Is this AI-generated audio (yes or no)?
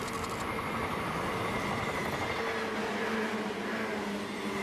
no